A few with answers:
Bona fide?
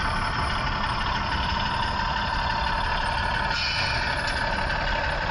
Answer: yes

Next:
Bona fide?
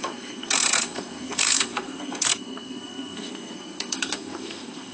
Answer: no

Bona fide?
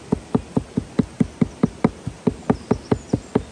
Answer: yes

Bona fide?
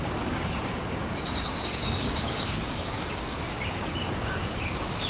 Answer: no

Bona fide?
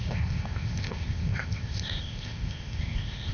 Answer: no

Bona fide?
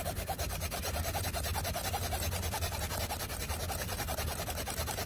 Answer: yes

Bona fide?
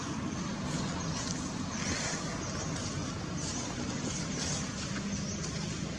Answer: yes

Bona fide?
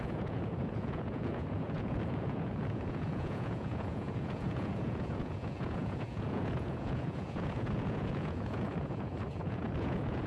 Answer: no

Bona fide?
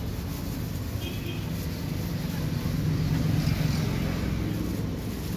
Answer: yes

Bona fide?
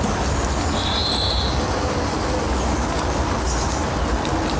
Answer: yes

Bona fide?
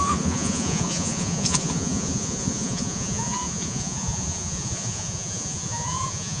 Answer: no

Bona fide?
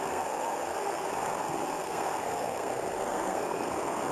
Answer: no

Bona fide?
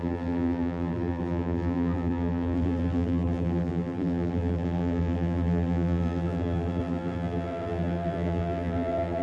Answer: no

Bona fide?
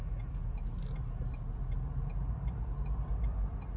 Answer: yes